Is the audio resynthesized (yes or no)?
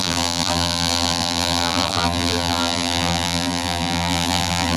yes